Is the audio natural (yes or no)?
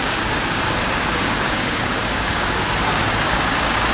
no